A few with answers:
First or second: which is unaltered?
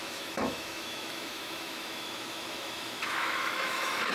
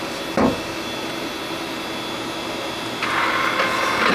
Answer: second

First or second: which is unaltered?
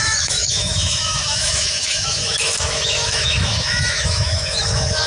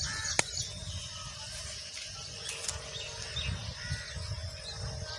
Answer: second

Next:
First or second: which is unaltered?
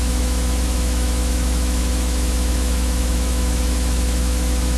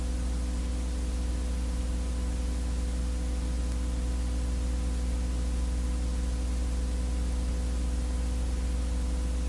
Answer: second